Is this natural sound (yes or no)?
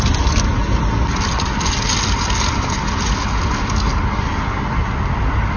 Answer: yes